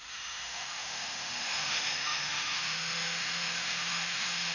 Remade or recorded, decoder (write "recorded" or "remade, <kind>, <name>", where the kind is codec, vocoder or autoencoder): remade, autoencoder, DAC-VAE